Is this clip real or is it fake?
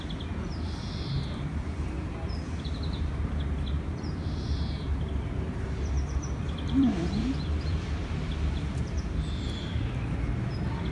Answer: fake